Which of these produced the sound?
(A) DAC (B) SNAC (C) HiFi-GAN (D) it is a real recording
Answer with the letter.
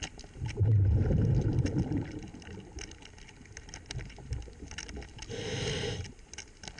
D